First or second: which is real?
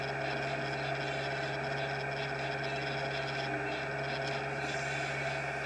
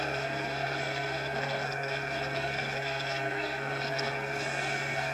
first